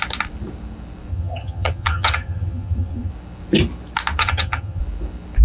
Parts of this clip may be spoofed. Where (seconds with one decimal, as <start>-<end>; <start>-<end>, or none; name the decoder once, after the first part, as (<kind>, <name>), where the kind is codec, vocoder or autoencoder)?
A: 1.1-3.1 (vocoder, HiFi-GAN); 4.2-4.8

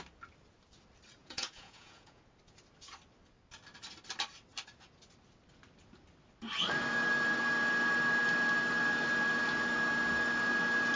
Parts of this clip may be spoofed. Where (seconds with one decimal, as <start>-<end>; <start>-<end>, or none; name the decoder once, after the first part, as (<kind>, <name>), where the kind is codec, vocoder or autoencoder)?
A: 1.2-2.2 (vocoder, Vocos)

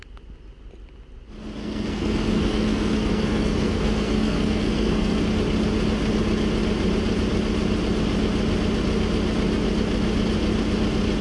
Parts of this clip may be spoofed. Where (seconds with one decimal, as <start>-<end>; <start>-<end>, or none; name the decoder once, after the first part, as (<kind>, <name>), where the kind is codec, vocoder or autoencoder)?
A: 1.6-5.2 (codec, SNAC)

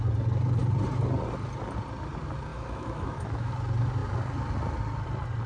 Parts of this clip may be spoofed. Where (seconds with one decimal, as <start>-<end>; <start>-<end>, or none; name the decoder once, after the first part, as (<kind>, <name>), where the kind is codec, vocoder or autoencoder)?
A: 2.5-3.5 (autoencoder, DAC-VAE)

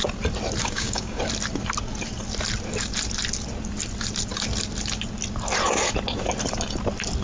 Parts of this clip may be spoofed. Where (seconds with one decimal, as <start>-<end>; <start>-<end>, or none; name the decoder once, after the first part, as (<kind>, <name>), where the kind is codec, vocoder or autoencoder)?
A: 0.6-1.2 (codec, DAC)

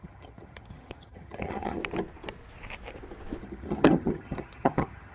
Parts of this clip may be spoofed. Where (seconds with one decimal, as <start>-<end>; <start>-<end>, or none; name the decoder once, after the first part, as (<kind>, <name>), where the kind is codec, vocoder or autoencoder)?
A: 0.0-1.8 (vocoder, HiFi-GAN); 3.4-5.1

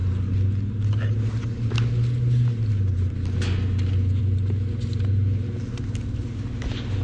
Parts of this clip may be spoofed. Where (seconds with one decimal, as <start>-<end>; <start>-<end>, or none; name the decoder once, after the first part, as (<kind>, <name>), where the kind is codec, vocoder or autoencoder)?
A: none